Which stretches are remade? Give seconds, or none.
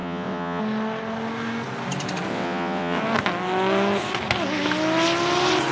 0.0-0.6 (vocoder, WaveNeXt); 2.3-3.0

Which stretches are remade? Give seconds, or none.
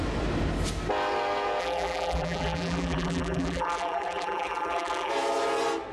1.6-5.1 (vocoder, BigVGAN v2)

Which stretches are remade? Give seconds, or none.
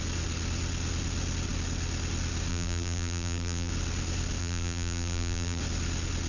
2.5-3.7 (vocoder, BigVGAN v2); 4.4-5.6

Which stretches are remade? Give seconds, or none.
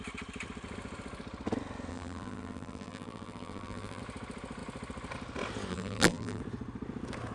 1.9-4.0 (vocoder, BigVGAN v2); 5.7-6.4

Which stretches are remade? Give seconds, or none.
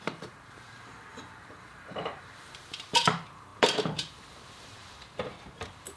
0.0-6.0 (vocoder, BigVGAN v2)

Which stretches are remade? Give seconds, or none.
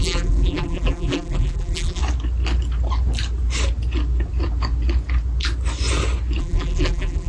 0.0-2.0 (vocoder, BigVGAN v2); 6.4-7.3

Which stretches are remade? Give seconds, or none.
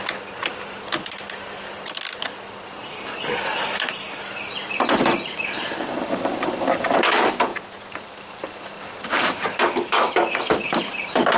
none